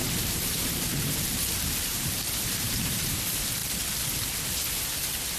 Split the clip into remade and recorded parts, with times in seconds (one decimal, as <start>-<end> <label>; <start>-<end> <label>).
0.0-3.2 remade; 3.2-5.4 recorded